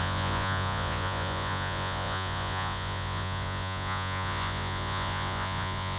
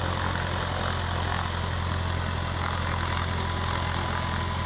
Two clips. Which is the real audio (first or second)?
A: second